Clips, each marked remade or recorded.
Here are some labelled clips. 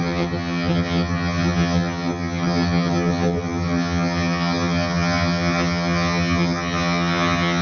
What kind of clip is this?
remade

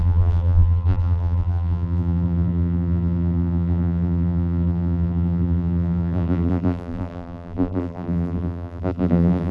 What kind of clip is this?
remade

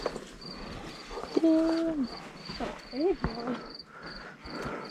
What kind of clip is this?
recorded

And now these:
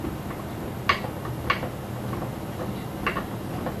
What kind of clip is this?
recorded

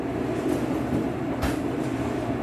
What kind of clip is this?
recorded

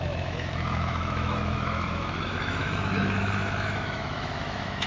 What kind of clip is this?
remade